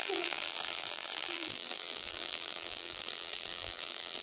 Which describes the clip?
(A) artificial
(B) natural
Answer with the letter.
A